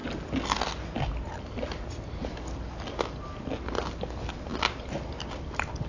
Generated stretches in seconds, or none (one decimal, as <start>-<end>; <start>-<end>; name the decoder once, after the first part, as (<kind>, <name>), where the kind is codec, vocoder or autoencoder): none